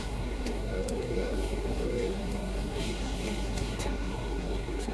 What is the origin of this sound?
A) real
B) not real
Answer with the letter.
B